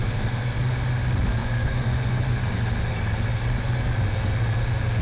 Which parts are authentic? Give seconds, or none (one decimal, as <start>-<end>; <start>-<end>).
0.0-1.4; 2.5-5.0

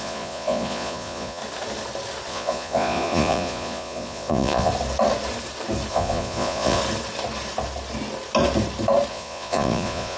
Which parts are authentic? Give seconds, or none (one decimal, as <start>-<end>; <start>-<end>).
1.4-2.3; 4.7-5.9; 6.8-9.1